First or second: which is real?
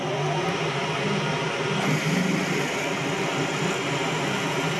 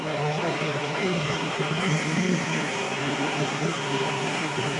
first